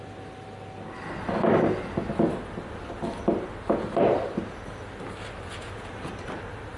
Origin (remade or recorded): recorded